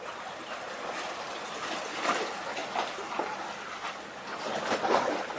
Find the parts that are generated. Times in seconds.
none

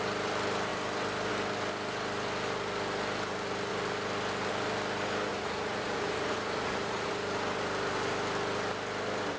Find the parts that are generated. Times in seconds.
5.3-7.1 (vocoder, Vocos)

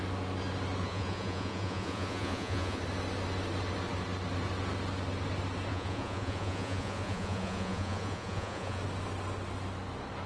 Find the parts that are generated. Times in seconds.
0.8-2.8 (vocoder, Vocos); 5.7-8.8

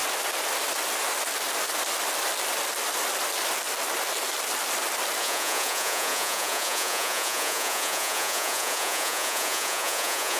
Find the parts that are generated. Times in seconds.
5.2-10.4 (vocoder, Vocos)